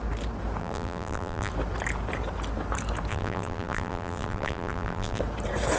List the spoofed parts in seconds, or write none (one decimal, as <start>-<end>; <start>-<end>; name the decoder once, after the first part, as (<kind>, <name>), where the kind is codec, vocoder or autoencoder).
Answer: 0.6-1.5 (vocoder, BigVGAN v2); 3.1-5.2